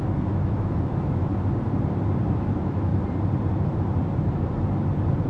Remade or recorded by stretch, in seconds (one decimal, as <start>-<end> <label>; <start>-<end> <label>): 0.0-1.3 remade; 1.3-2.3 recorded; 2.3-2.9 remade; 2.9-5.3 recorded